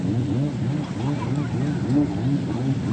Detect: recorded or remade recorded